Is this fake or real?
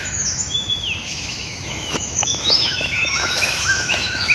fake